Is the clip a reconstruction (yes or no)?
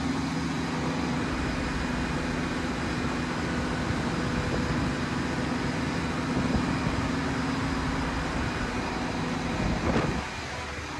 no